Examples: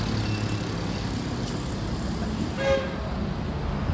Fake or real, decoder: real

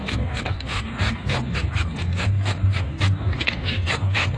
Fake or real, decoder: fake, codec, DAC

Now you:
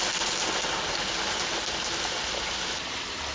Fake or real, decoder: real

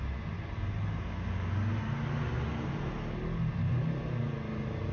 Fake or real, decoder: real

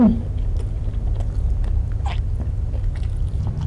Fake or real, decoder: real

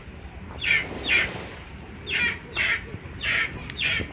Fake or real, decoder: real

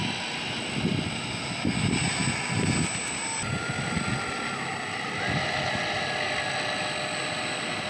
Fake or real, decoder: real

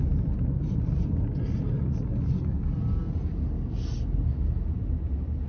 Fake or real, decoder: real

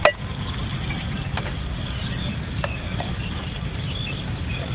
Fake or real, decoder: real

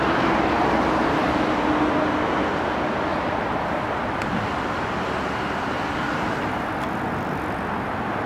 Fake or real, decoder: real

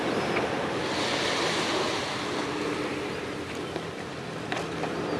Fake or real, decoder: real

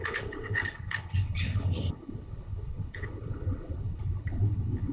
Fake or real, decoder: fake, codec, HILCodec